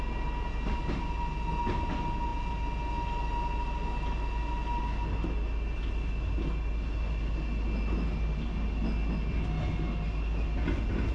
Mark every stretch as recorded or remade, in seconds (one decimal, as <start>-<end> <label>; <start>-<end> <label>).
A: 0.0-11.1 recorded